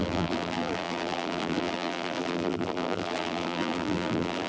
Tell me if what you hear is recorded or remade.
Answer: remade